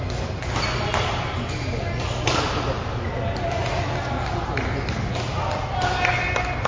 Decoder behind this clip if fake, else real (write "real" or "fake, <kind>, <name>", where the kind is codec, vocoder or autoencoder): real